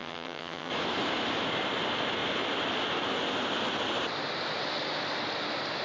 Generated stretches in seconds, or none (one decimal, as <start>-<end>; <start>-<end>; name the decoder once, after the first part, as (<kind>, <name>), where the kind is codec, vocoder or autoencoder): 0.0-0.7 (vocoder, HiFi-GAN)